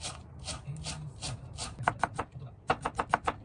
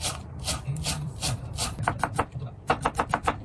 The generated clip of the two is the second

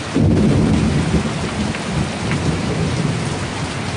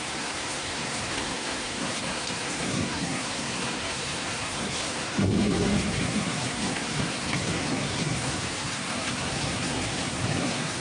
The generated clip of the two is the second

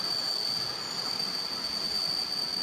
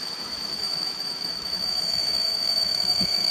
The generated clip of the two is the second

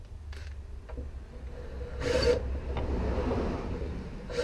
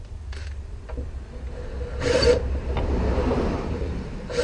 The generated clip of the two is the second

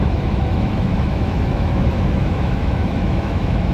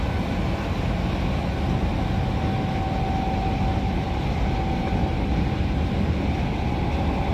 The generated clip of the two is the first